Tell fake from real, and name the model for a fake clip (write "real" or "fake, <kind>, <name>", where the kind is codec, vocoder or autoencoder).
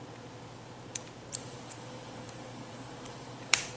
fake, vocoder, BigVGAN v2